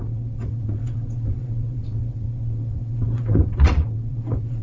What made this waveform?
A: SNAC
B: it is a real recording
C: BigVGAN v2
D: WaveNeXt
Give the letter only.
D